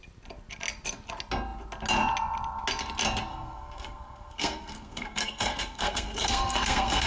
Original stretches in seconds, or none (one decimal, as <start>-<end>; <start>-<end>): 0.0-3.3